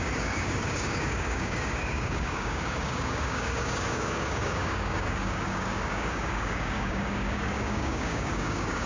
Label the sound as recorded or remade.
remade